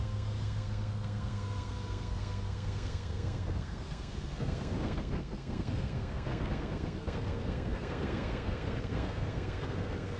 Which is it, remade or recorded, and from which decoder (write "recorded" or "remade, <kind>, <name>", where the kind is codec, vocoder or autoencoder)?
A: remade, codec, SNAC